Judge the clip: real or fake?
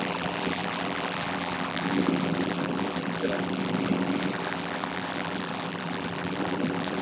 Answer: fake